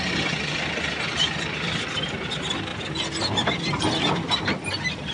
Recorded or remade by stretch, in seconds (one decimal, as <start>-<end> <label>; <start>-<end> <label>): 0.0-5.1 recorded